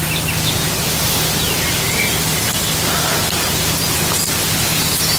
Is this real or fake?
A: real